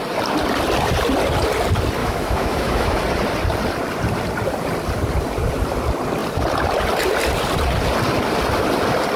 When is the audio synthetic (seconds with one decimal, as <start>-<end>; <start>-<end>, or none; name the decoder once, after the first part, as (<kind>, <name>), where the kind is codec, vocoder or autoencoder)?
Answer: 2.0-3.0 (autoencoder, DAC-VAE)